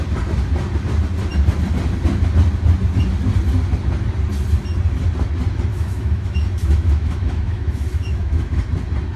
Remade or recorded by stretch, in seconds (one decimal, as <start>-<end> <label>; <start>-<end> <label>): 0.0-5.7 recorded; 5.7-8.6 remade; 8.6-9.2 recorded